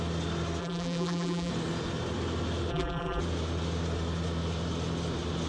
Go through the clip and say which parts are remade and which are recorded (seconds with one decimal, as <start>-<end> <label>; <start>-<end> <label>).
0.0-0.6 recorded; 0.6-1.5 remade; 1.5-2.7 recorded; 2.7-3.2 remade; 3.2-5.5 recorded